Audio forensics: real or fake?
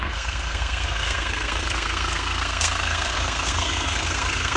fake